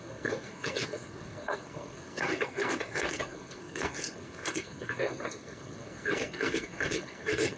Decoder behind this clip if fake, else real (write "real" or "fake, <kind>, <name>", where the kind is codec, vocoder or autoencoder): fake, codec, SNAC